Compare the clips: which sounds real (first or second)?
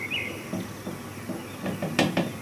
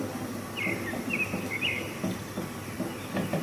first